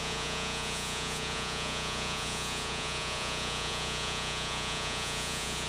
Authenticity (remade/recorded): remade